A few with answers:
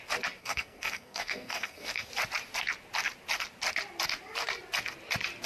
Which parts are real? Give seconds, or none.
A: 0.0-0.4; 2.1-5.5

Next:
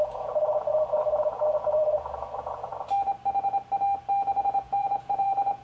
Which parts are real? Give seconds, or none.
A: 2.7-4.4